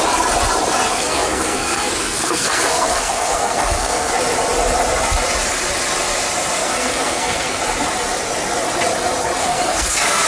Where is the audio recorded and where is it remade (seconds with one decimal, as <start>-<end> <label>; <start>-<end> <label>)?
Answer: 0.0-0.9 recorded; 0.9-4.1 remade; 4.1-6.6 recorded; 6.6-7.6 remade; 7.6-9.4 recorded; 9.4-10.3 remade